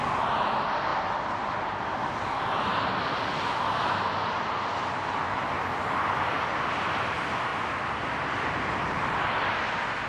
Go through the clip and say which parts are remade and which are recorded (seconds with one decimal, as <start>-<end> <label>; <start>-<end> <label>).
0.0-10.1 recorded